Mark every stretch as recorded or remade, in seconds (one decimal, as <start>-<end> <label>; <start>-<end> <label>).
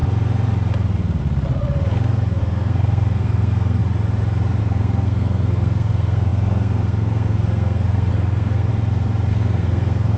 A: 0.0-2.4 recorded; 2.4-3.8 remade; 3.8-4.6 recorded; 4.6-8.7 remade; 8.7-9.3 recorded; 9.3-10.2 remade